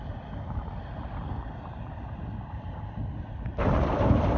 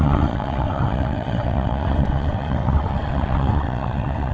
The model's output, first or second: second